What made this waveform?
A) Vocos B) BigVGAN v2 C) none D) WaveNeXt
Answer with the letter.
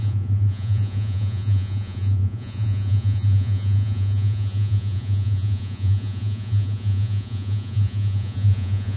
A